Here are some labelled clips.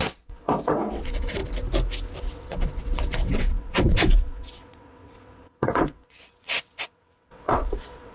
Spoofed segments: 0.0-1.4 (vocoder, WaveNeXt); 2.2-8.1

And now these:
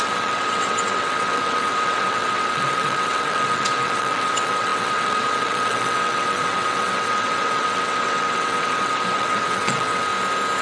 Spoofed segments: 0.0-10.1 (vocoder, WaveNeXt)

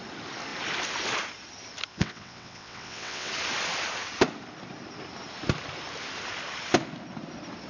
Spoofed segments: 1.9-3.3 (vocoder, WaveNeXt)

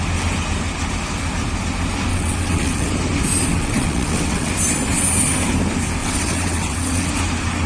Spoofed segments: 2.1-2.9 (vocoder, WaveNeXt); 3.5-4.5; 6.0-7.1

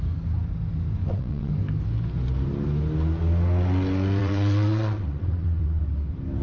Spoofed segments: 1.0-1.5 (vocoder, WaveNeXt); 4.2-5.8

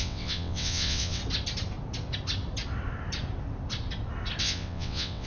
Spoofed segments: 0.0-1.2 (vocoder, WaveNeXt); 4.4-5.3

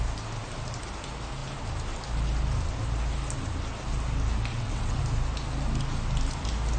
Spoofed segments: 4.5-5.0 (vocoder, WaveNeXt)

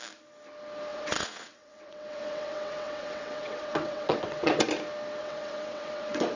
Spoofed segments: 0.9-4.7 (vocoder, WaveNeXt); 5.2-6.4